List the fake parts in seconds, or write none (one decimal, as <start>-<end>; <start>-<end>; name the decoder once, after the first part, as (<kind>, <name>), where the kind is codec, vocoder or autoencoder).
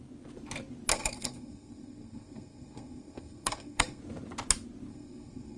0.9-4.0 (codec, SNAC); 4.9-5.6